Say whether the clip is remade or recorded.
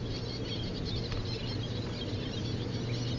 recorded